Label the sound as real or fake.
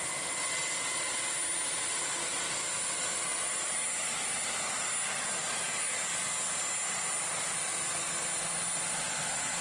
real